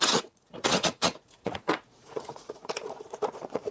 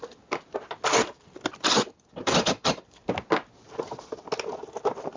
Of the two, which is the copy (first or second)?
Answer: first